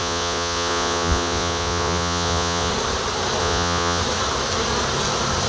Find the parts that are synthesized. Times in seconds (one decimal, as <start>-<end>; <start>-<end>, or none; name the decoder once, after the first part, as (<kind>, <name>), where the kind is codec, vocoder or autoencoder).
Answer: 0.0-2.7 (vocoder, Vocos); 3.4-4.0